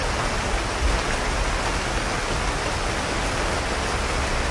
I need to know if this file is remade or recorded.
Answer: recorded